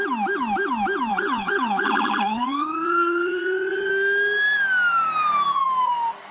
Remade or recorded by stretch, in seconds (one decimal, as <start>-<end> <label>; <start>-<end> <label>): 0.0-1.1 recorded; 1.1-3.9 remade; 3.9-6.3 recorded